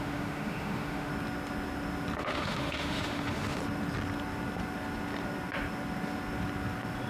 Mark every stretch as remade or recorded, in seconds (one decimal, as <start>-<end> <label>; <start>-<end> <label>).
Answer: 0.0-1.1 remade; 1.1-2.2 recorded; 2.2-3.6 remade; 3.6-7.1 recorded